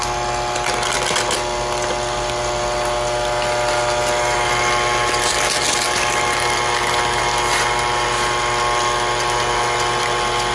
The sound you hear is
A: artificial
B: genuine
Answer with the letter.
B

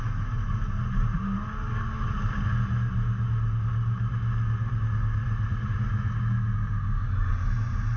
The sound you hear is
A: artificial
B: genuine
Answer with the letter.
B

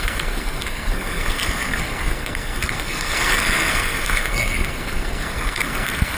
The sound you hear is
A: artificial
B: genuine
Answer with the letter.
A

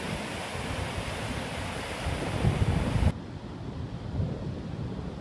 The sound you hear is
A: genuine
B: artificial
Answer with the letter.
A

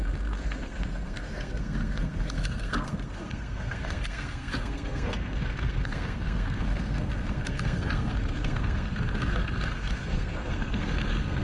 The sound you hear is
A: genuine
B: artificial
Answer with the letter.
B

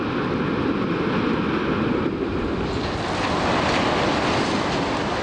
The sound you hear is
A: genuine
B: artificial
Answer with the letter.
A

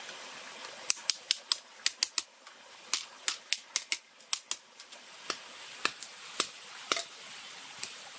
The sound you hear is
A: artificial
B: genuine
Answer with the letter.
B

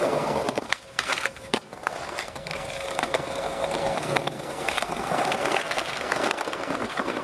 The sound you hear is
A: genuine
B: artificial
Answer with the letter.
B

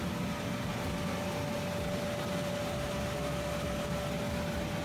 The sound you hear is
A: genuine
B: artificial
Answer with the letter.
A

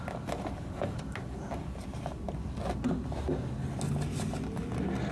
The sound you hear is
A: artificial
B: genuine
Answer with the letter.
B